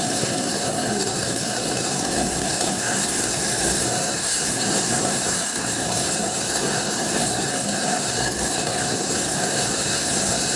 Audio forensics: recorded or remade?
remade